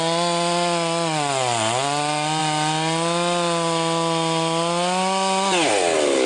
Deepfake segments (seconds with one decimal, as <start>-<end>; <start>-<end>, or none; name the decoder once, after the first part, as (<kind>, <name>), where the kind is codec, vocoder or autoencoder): none